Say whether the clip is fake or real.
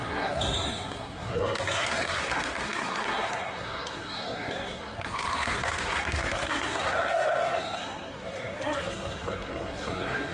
fake